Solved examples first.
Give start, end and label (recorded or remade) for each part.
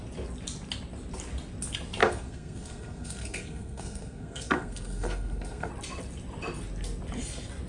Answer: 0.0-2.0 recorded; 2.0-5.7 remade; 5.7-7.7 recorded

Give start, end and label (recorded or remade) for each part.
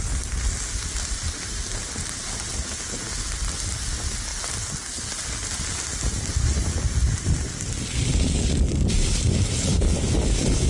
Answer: 0.0-10.7 recorded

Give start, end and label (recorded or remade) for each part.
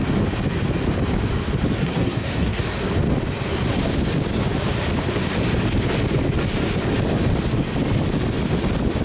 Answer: 0.0-1.8 recorded; 1.8-2.6 remade; 2.6-9.0 recorded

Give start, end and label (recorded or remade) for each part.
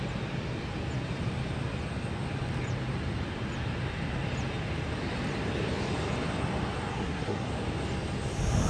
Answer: 0.0-6.9 recorded; 6.9-7.5 remade; 7.5-8.7 recorded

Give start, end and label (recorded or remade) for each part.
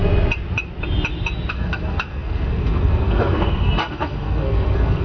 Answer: 0.0-1.5 recorded; 1.5-5.0 remade